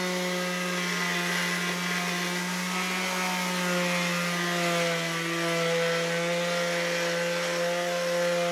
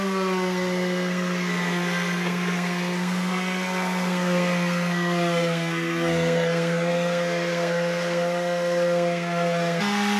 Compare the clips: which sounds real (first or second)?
first